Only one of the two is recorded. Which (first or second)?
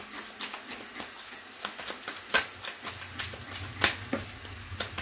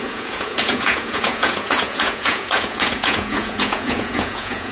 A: first